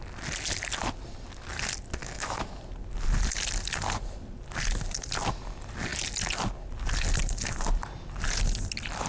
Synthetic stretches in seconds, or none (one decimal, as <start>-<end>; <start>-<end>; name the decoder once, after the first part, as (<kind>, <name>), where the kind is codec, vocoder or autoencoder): 2.0-2.6 (autoencoder, DAC-VAE)